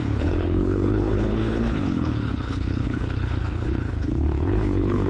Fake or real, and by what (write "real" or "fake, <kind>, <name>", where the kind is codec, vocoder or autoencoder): fake, codec, HILCodec